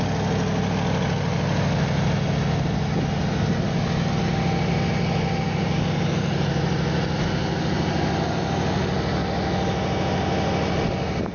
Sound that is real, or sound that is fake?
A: real